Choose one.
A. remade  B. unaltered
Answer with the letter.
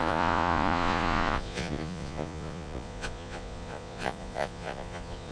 A